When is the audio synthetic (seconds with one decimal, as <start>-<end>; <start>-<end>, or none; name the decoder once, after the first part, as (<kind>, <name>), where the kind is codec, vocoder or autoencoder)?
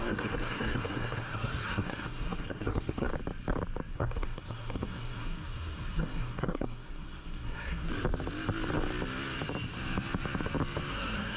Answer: 0.0-3.1 (codec, SNAC); 3.9-7.9; 10.9-11.4